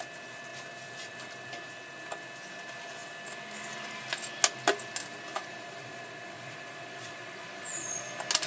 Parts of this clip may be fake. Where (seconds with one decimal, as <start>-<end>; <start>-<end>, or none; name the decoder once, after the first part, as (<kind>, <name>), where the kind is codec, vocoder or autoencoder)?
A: 5.4-8.0 (vocoder, Vocos)